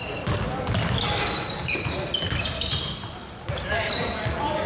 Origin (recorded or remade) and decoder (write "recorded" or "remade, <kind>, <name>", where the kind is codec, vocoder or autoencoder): recorded